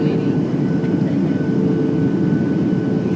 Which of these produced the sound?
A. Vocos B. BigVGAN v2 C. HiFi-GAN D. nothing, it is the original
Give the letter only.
D